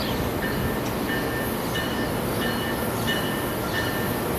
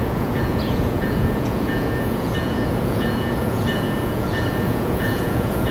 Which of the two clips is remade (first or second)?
second